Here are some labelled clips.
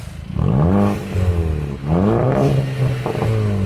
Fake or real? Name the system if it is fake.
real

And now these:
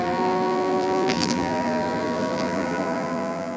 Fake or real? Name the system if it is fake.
fake, vocoder, BigVGAN v2